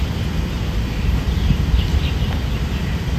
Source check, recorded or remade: recorded